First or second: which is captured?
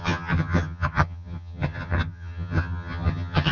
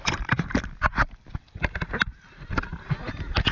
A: second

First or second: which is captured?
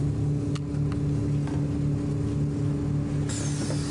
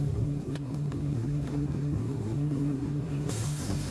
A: first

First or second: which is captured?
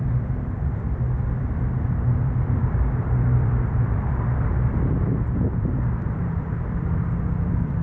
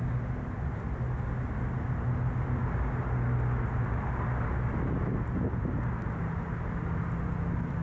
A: second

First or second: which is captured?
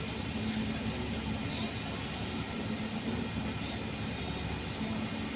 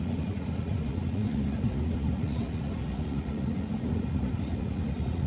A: first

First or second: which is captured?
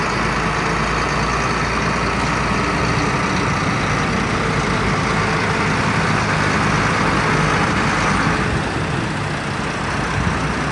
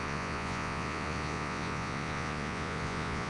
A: first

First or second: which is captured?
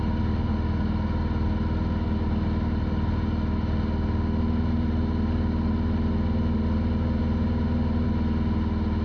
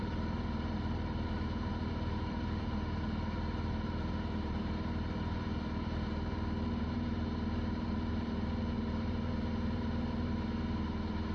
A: first